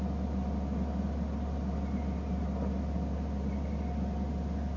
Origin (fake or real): real